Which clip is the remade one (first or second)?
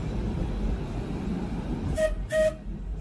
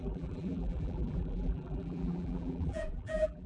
second